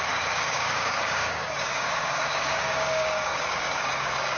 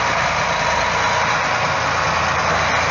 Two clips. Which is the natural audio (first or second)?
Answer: second